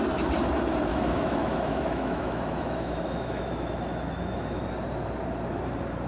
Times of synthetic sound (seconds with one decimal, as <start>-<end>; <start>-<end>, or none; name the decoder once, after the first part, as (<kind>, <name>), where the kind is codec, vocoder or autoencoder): 0.9-4.6 (autoencoder, DAC-VAE)